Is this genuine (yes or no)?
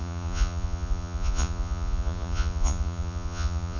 no